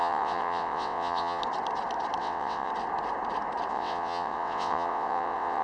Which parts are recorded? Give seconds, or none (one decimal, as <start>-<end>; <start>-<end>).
1.4-2.2; 2.7-3.7